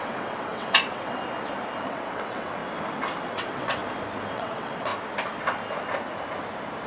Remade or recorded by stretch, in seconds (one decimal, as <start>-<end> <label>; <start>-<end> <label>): 0.0-1.2 remade; 1.2-1.8 recorded; 1.8-2.6 remade; 2.6-3.3 recorded; 3.3-3.8 remade; 3.8-4.3 recorded; 4.3-4.9 remade; 4.9-6.9 recorded